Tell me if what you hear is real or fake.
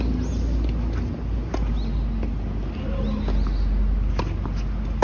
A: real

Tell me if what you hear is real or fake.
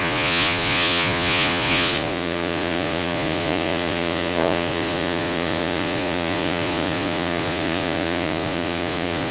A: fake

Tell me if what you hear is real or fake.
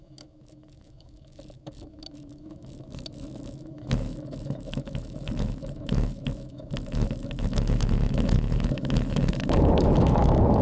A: fake